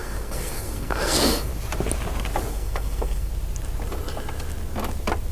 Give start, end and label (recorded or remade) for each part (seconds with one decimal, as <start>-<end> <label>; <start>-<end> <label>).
0.0-1.5 remade; 1.5-2.5 recorded; 2.5-3.3 remade; 3.3-5.3 recorded